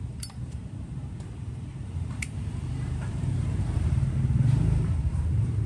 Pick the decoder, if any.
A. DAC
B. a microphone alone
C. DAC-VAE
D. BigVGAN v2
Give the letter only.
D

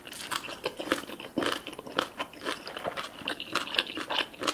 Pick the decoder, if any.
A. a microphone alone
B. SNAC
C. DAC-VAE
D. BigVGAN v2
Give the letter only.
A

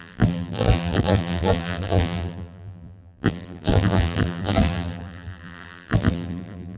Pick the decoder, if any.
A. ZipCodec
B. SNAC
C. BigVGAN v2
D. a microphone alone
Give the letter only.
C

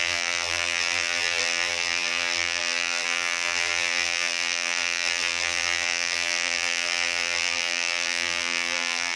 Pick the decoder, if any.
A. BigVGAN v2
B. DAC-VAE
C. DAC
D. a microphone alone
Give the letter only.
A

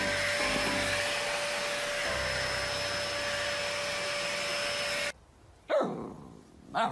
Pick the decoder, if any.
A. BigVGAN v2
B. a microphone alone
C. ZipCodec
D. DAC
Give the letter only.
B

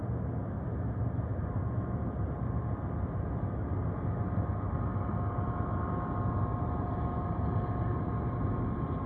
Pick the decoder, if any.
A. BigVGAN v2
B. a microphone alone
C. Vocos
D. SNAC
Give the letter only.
B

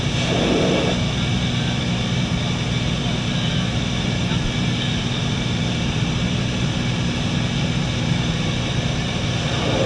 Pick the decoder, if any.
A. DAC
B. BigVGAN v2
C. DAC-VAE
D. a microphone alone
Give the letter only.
D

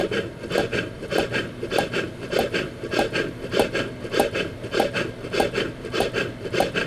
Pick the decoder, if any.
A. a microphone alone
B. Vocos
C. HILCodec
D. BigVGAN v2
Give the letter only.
D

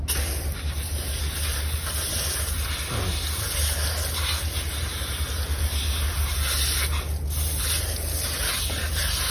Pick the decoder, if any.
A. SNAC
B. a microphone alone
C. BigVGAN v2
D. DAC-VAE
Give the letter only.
B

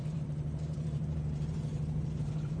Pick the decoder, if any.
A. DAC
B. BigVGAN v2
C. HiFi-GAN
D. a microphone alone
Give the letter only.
B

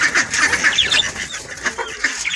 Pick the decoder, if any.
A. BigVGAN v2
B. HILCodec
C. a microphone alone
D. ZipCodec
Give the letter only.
C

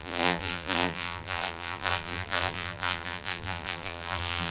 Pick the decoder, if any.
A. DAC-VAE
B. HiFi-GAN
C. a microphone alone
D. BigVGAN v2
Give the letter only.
D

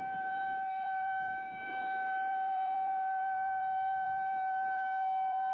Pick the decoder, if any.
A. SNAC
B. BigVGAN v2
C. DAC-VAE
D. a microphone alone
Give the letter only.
B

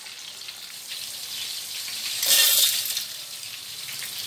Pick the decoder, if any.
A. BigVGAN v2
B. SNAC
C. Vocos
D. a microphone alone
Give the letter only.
A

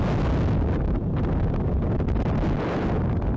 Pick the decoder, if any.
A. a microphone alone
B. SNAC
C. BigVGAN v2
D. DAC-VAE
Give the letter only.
A